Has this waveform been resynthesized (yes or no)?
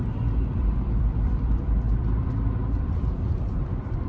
yes